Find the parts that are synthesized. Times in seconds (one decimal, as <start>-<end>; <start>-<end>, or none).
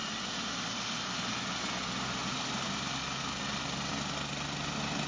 2.2-2.7